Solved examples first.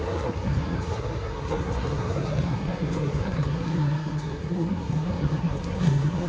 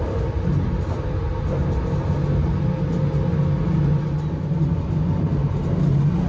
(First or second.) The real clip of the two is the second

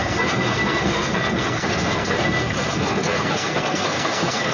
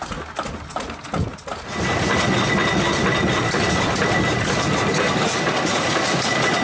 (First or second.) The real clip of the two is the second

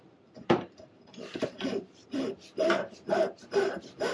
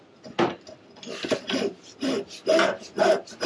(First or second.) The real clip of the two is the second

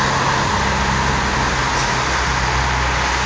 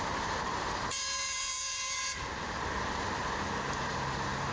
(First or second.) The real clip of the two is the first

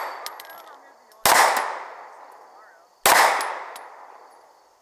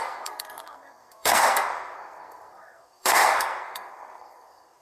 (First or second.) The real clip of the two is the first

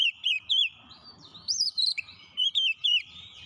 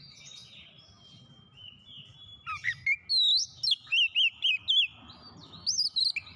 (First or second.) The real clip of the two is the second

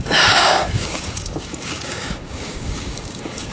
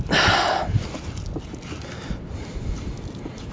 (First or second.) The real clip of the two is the second